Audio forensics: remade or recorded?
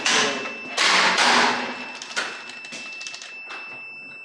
recorded